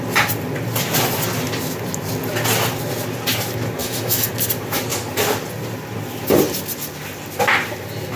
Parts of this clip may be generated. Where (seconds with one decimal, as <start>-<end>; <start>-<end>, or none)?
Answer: 3.8-4.3